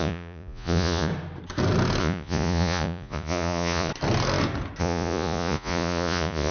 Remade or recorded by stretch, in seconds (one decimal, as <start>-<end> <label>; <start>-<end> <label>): 0.0-1.1 remade; 1.1-2.0 recorded; 2.0-3.9 remade; 3.9-4.8 recorded; 4.8-6.5 remade